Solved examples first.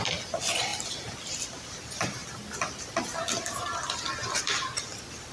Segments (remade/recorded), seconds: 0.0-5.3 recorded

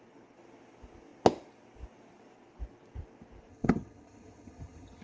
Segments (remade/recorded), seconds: 0.0-3.5 recorded; 3.5-5.0 remade

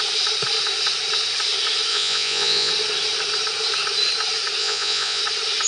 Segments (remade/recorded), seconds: 0.0-1.9 recorded; 1.9-2.7 remade; 2.7-4.6 recorded; 4.6-5.2 remade; 5.2-5.7 recorded

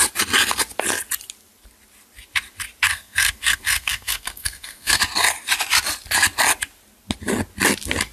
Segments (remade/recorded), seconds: 0.0-2.9 recorded; 2.9-5.0 remade; 5.0-8.1 recorded